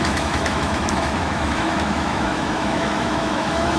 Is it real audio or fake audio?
fake